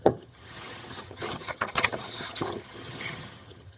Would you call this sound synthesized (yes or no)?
yes